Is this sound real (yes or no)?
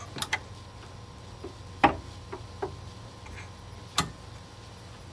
yes